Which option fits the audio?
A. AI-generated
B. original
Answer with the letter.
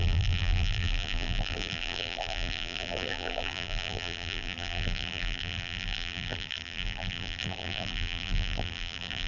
A